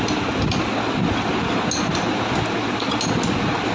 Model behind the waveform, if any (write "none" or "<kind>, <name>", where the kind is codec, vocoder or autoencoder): none